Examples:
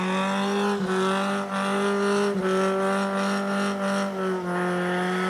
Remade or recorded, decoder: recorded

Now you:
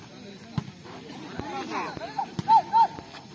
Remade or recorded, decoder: recorded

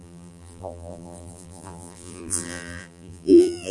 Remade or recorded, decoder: remade, vocoder, BigVGAN v2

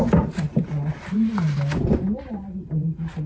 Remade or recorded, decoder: remade, vocoder, BigVGAN v2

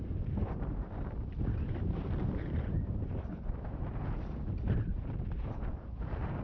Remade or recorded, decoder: remade, vocoder, BigVGAN v2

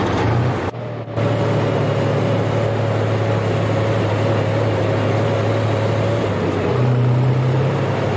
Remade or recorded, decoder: recorded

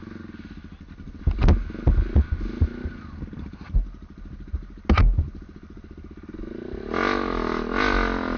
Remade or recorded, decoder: recorded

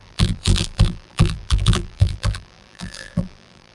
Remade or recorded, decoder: remade, vocoder, BigVGAN v2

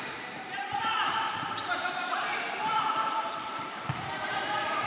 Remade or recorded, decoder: remade, vocoder, BigVGAN v2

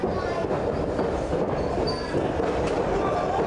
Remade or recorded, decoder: recorded